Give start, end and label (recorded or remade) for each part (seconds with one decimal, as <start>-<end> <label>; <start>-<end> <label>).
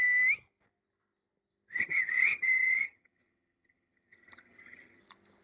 0.0-1.8 recorded; 1.8-5.0 remade; 5.0-5.4 recorded